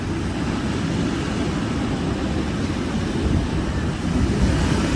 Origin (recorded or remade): recorded